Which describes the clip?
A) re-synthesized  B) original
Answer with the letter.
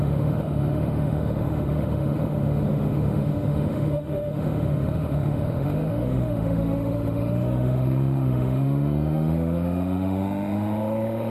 A